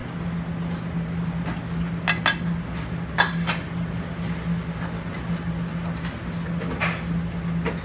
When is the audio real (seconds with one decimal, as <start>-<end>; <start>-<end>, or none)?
0.0-7.8